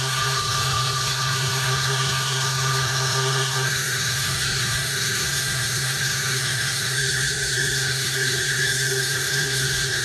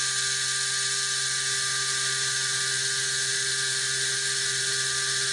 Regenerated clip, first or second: first